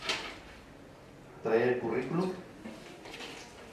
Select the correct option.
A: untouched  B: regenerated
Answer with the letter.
A